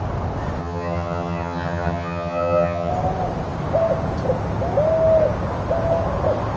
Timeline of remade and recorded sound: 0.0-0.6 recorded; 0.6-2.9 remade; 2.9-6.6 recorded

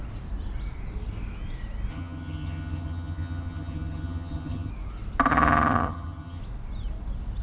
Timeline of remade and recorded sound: 0.0-1.9 recorded; 1.9-4.7 remade; 4.7-5.3 recorded; 5.3-6.4 remade; 6.4-7.4 recorded